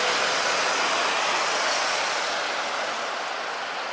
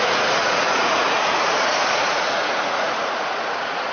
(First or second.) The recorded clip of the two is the first